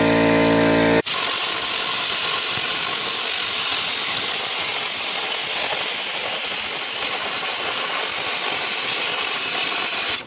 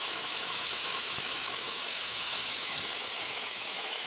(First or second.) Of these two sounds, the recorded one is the first